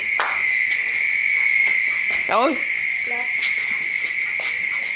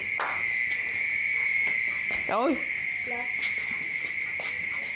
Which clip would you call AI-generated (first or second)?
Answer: first